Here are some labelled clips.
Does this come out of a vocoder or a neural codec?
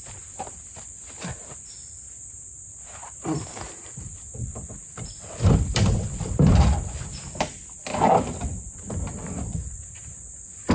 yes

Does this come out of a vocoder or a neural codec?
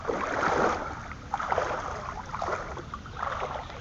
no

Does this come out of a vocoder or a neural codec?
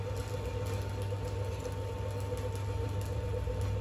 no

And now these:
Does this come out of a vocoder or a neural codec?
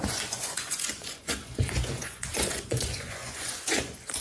yes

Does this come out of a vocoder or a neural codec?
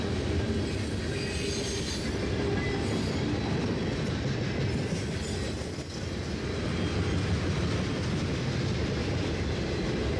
no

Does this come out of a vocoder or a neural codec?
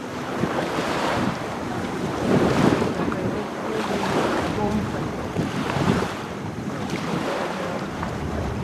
yes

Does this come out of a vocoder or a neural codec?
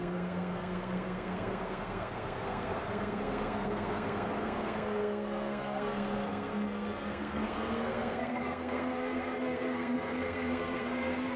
yes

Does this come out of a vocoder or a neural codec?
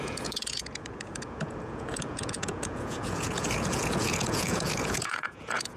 yes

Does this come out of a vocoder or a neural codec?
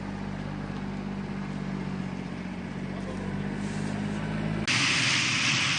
no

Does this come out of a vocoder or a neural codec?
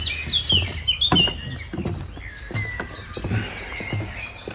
no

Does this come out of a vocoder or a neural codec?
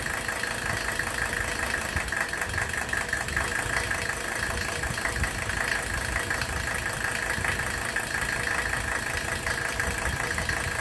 no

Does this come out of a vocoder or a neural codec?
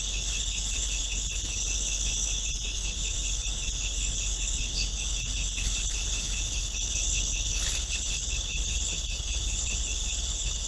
yes